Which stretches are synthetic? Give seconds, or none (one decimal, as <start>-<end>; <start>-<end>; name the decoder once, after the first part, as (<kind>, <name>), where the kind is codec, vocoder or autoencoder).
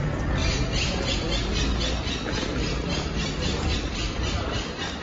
0.0-0.4 (vocoder, BigVGAN v2); 3.4-5.0